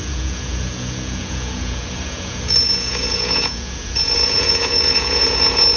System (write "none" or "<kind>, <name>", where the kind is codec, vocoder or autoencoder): vocoder, Vocos